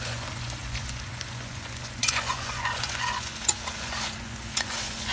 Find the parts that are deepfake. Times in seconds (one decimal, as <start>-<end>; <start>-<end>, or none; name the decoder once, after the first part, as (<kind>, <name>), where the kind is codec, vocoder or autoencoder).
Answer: 0.0-5.1 (vocoder, Vocos)